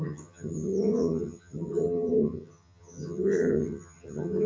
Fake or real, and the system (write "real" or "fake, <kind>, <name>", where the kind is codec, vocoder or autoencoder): fake, vocoder, HiFi-GAN